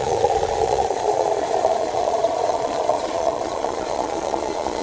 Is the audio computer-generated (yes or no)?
yes